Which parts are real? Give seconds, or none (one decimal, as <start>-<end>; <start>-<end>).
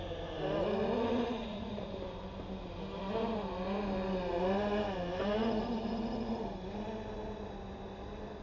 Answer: 0.0-1.4; 1.9-8.4